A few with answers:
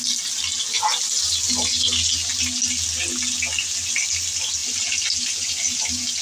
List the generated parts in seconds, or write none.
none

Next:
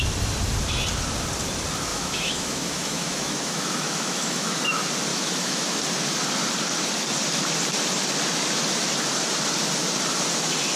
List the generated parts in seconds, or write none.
1.9-4.6; 5.1-5.8

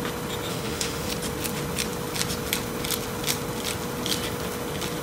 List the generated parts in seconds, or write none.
0.5-1.1

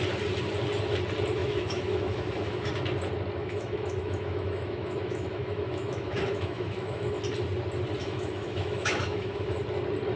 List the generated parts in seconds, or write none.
1.4-2.7; 3.4-7.2; 8.0-9.6

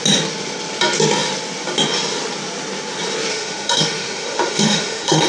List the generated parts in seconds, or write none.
3.3-5.3